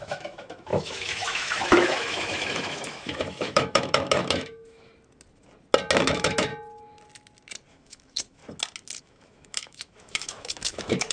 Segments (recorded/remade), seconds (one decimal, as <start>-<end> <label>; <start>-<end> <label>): 0.0-4.9 remade; 4.9-6.0 recorded; 6.0-6.5 remade; 6.5-7.7 recorded; 7.7-8.4 remade; 8.4-9.0 recorded; 9.0-11.1 remade